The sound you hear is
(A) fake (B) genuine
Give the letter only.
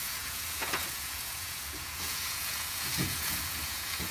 A